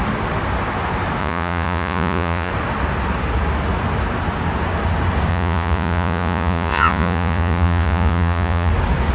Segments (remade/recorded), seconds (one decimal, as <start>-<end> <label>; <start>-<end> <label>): 0.0-1.2 recorded; 1.2-2.5 remade; 2.5-5.3 recorded; 5.3-8.7 remade; 8.7-9.1 recorded